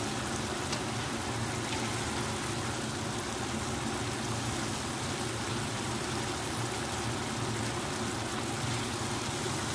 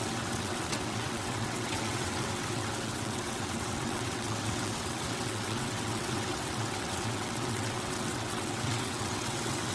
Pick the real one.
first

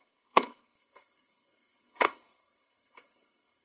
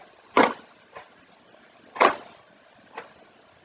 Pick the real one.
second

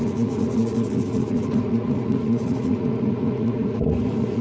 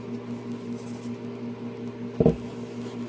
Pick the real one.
second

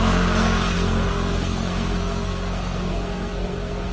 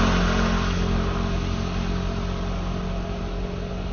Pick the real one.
second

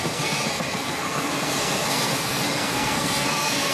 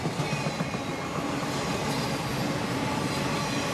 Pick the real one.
second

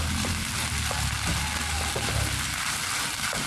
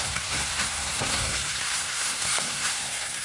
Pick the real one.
first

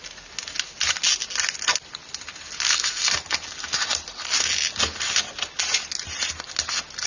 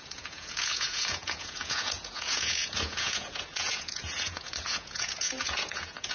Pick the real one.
first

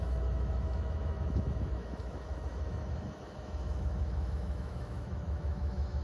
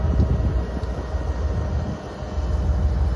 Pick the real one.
second